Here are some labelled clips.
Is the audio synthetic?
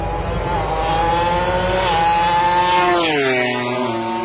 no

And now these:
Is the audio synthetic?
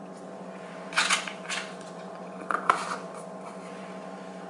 yes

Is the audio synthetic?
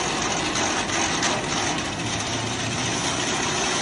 no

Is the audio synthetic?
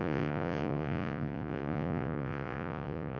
yes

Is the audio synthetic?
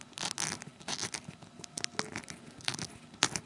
no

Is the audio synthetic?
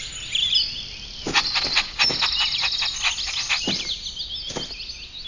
no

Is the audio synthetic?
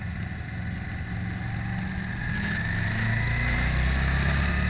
no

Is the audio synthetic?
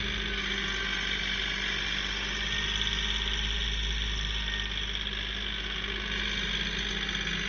no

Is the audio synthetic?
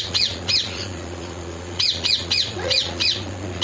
yes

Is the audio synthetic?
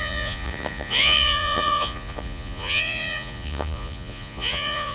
yes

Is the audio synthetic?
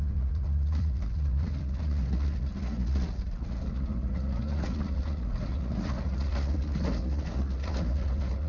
yes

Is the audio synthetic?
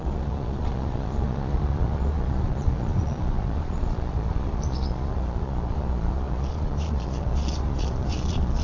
yes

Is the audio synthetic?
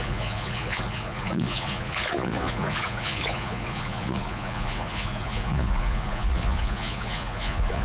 yes